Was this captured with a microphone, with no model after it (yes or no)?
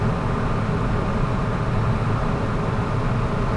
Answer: yes